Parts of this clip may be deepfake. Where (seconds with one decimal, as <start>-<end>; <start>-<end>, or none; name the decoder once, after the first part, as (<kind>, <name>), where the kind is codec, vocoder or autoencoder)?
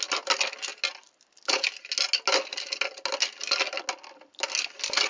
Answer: none